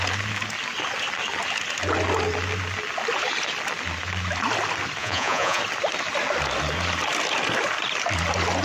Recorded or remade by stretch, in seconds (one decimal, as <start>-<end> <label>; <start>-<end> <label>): 0.0-5.0 recorded; 5.0-5.6 remade; 5.6-8.6 recorded